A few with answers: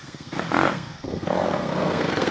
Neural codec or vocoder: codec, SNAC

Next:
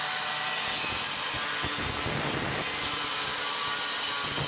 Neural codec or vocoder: none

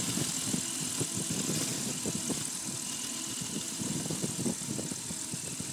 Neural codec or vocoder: none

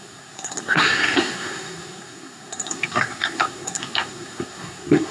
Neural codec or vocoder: codec, SNAC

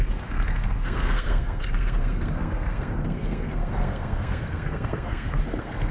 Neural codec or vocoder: codec, SNAC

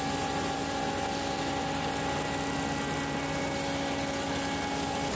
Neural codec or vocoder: none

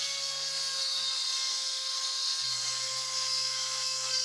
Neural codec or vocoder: codec, SNAC